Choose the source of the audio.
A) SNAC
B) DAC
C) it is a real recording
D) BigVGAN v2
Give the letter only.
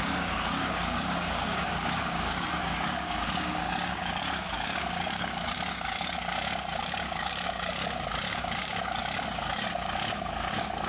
B